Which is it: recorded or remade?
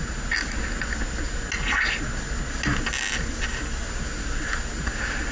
recorded